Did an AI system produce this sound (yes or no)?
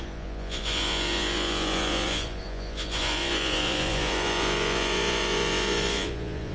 yes